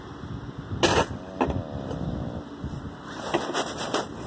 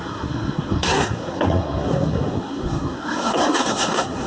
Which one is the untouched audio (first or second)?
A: first